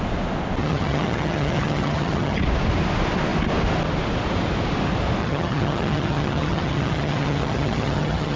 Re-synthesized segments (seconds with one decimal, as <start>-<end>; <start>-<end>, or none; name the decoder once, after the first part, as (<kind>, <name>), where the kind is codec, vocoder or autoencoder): 0.6-2.4 (vocoder, HiFi-GAN); 5.2-8.4